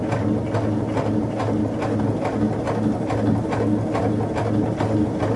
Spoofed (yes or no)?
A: no